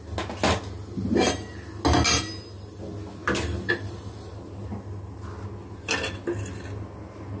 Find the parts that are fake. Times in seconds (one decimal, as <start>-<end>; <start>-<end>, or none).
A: none